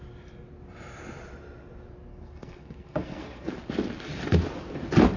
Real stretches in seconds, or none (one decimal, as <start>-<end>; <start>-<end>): 0.0-2.1; 3.5-5.2